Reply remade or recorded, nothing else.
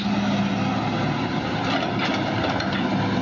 recorded